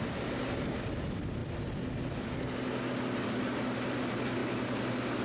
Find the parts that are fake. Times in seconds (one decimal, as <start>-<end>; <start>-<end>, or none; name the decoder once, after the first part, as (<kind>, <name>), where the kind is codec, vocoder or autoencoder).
none